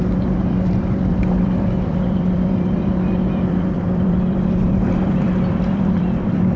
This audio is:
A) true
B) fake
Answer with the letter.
B